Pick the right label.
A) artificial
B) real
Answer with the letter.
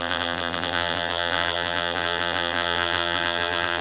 A